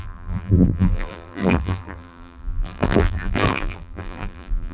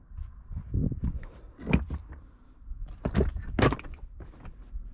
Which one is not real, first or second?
first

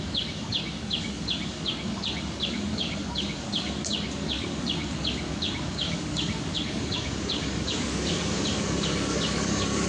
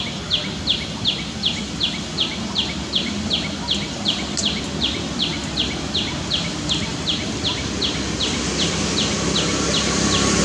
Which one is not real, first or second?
first